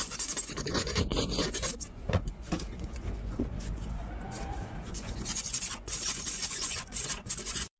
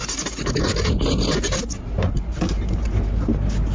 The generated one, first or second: first